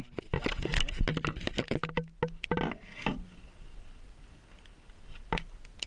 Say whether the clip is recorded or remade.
recorded